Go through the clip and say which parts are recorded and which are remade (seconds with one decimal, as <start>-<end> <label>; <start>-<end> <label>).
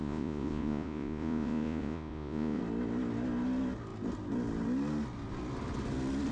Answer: 0.0-2.6 remade; 2.6-6.3 recorded